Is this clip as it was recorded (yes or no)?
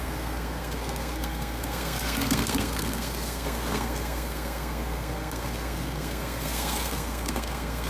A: no